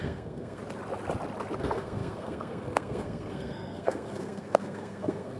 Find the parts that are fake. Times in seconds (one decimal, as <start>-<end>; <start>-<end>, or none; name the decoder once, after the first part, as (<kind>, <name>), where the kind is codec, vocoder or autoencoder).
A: 0.0-0.6 (codec, SNAC); 1.6-5.4